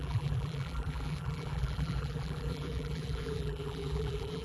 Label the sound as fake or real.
fake